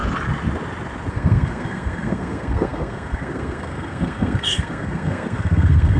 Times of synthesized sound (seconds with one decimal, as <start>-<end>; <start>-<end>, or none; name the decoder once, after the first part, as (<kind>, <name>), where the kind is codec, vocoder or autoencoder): 1.1-6.0 (codec, SNAC)